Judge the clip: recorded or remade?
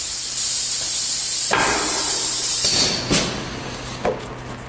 recorded